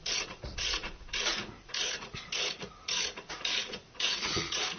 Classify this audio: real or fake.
fake